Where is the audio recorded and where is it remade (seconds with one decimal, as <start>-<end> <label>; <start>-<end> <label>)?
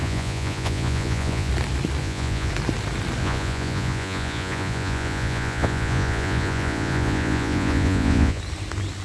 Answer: 0.0-1.5 remade; 1.5-2.0 recorded; 2.0-2.5 remade; 2.5-3.2 recorded; 3.2-8.4 remade; 8.4-9.0 recorded